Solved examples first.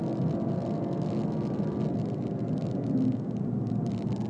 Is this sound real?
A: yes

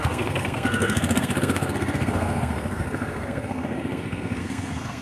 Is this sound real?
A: no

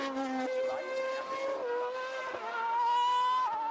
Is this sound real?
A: yes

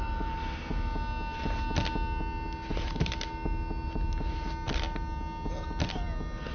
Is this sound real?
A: yes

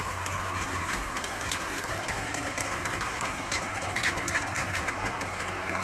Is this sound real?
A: no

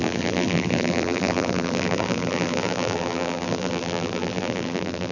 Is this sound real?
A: no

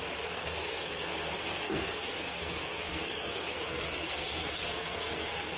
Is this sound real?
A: no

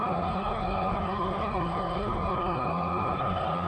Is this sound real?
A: no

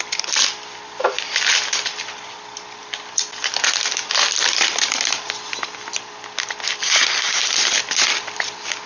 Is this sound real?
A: yes